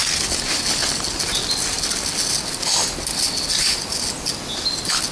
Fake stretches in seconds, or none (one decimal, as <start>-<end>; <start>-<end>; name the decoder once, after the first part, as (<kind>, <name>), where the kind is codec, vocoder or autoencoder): none